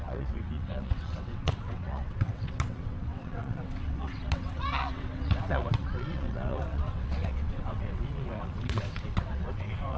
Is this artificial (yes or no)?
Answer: yes